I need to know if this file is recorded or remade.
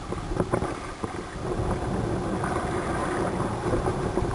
recorded